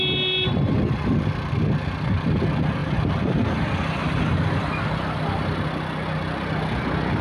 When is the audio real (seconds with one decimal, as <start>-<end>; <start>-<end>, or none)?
0.0-7.2